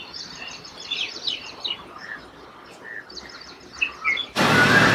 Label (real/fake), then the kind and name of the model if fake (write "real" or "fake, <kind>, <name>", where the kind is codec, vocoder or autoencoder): real